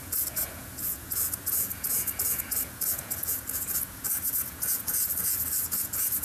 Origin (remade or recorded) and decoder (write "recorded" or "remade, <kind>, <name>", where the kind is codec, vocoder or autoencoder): remade, vocoder, Vocos